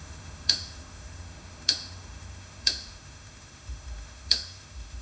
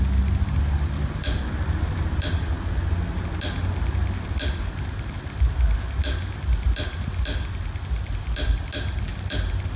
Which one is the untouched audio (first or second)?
second